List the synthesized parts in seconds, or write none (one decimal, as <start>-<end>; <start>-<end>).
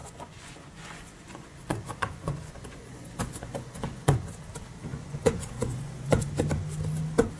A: 0.0-4.4; 4.9-6.2